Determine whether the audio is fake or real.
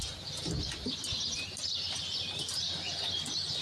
fake